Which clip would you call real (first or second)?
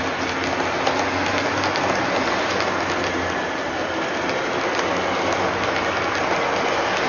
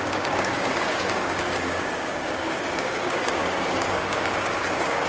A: first